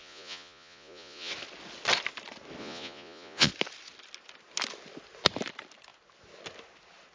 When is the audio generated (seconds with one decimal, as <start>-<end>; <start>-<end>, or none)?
0.0-1.3; 2.6-3.5